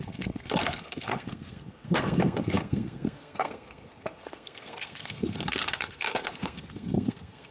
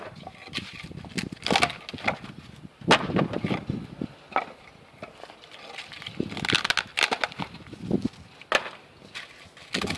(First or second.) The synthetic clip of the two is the first